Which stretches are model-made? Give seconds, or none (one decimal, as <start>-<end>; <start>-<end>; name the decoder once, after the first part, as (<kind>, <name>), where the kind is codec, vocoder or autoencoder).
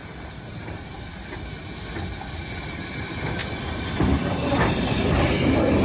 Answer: 0.0-1.7 (vocoder, BigVGAN v2); 3.4-5.8